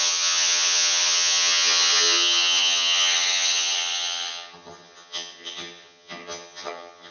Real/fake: fake